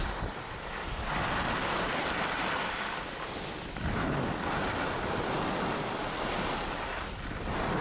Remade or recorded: recorded